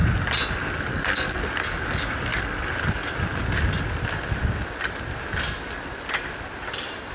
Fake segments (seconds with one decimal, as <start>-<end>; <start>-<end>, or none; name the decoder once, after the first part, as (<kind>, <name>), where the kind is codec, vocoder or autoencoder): 0.9-1.4 (codec, SNAC)